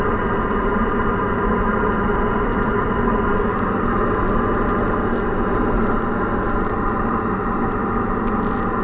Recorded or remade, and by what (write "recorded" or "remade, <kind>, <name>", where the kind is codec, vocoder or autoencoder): recorded